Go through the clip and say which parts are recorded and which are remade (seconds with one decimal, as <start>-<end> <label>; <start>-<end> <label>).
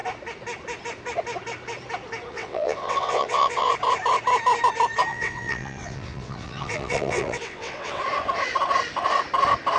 0.0-2.3 recorded; 2.3-3.7 remade; 3.7-5.1 recorded; 5.1-8.0 remade; 8.0-9.8 recorded